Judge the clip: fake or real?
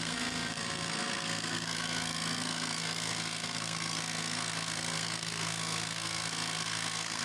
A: fake